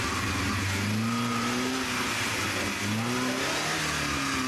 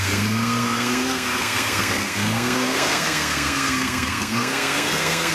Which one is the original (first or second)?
first